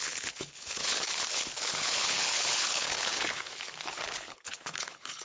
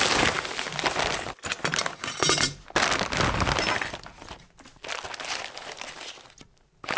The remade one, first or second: first